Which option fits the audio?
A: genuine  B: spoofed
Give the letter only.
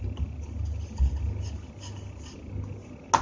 A